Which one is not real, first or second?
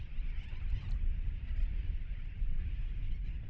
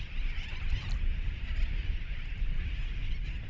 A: first